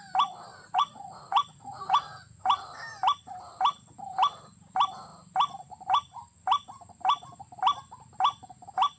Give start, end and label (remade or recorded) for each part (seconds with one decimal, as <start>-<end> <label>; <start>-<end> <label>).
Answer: 0.0-0.5 recorded; 0.5-2.4 remade; 2.4-9.0 recorded